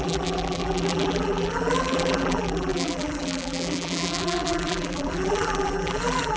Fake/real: fake